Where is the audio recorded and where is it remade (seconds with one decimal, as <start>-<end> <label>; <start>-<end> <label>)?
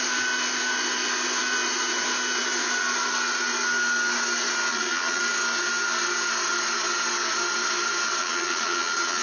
0.0-4.7 recorded; 4.7-5.2 remade; 5.2-8.2 recorded; 8.2-9.2 remade